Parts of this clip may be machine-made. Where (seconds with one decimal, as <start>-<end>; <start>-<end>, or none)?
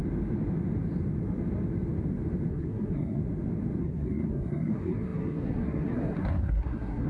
2.5-3.2; 3.8-7.1